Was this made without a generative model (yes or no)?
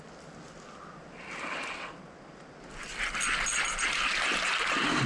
yes